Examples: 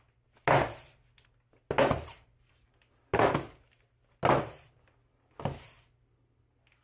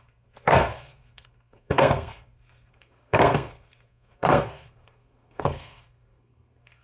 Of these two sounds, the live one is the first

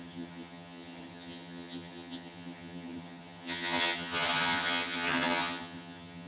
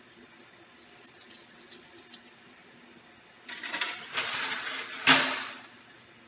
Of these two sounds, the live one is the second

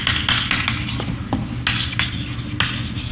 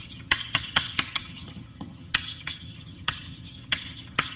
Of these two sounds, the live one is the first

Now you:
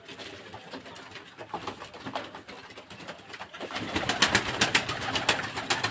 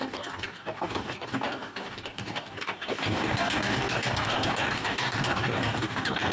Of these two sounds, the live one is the first